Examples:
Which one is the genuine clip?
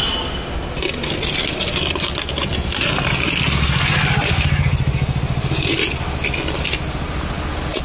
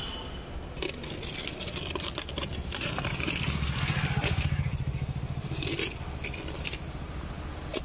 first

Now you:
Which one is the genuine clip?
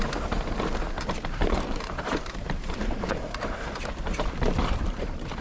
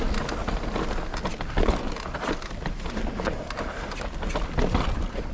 second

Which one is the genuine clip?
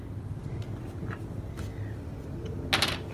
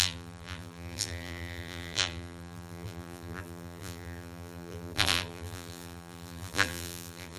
first